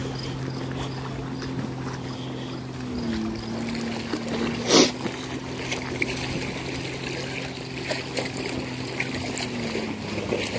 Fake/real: real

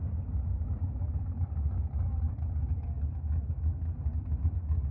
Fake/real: real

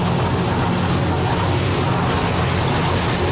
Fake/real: real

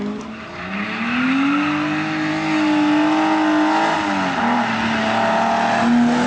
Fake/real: real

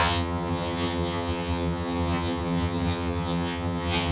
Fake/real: fake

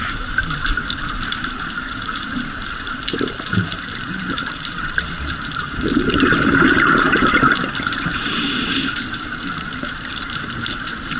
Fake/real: fake